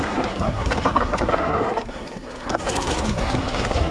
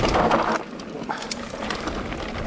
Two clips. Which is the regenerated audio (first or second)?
first